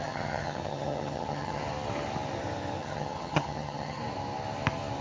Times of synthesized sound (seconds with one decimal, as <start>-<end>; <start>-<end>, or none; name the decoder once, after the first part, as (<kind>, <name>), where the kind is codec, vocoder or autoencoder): 0.0-1.6 (vocoder, HiFi-GAN); 2.8-4.0